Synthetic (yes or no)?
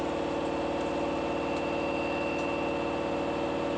no